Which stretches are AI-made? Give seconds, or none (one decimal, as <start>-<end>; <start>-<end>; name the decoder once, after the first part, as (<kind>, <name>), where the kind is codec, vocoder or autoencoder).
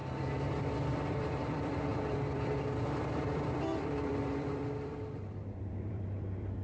0.9-6.6 (vocoder, BigVGAN v2)